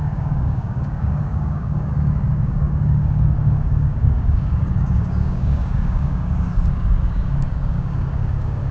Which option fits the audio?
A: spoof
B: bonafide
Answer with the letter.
A